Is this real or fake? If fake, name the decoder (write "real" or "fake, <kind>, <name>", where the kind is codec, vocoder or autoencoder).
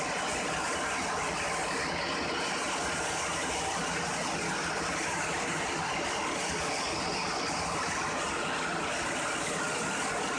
real